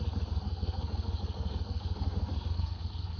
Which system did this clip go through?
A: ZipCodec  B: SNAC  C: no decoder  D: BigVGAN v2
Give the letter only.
B